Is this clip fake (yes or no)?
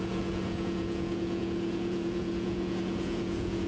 yes